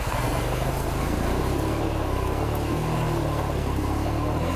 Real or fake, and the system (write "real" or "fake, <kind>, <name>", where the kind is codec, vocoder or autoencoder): fake, codec, SNAC